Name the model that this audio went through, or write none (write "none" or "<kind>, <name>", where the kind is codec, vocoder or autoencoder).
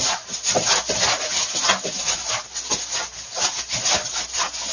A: none